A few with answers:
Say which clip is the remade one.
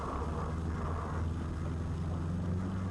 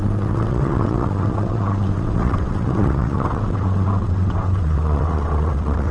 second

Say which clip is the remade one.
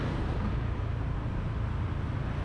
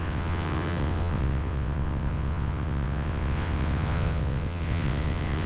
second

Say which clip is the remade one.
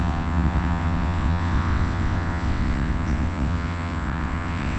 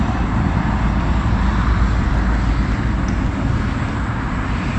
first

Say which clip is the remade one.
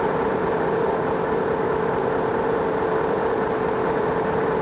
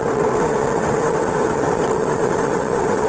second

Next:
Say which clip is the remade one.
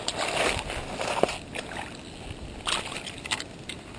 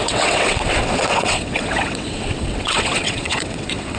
second